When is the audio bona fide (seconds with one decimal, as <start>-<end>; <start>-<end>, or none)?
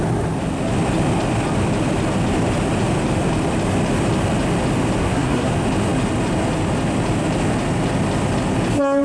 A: 0.0-5.0; 5.5-9.0